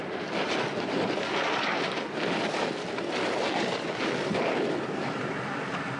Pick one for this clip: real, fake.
real